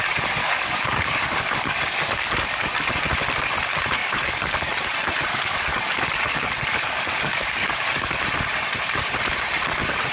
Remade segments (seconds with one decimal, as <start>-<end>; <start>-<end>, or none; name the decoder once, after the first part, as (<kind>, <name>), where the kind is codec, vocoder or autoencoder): 0.4-3.0 (codec, DAC); 4.0-4.7; 5.3-8.2